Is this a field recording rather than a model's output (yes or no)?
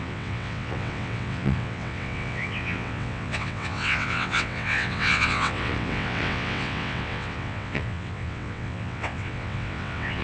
no